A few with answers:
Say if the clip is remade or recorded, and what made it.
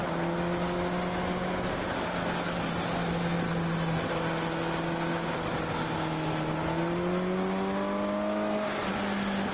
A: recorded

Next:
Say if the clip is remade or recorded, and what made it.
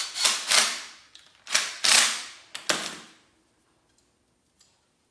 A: recorded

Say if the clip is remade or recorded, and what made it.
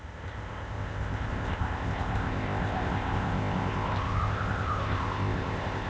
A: remade, codec, ZipCodec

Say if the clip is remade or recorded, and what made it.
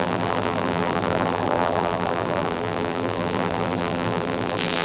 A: remade, vocoder, BigVGAN v2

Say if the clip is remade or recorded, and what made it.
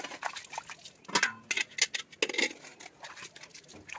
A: recorded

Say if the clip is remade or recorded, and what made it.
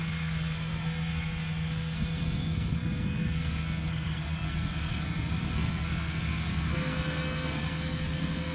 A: remade, codec, SNAC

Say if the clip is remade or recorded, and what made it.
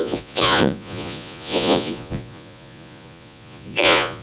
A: remade, vocoder, Vocos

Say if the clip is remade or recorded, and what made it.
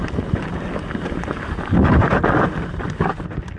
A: recorded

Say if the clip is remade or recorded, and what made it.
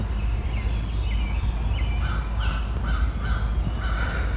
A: recorded